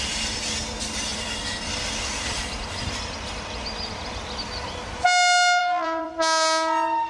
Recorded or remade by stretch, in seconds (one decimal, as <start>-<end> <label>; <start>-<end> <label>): 0.0-1.1 recorded; 1.1-4.2 remade; 4.2-5.6 recorded; 5.6-6.1 remade; 6.1-7.1 recorded